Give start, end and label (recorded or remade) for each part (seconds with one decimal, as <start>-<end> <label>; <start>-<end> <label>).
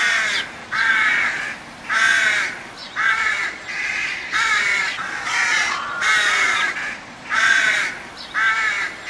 0.0-0.6 recorded; 0.6-1.4 remade; 1.4-2.8 recorded; 2.8-7.9 remade; 7.9-9.1 recorded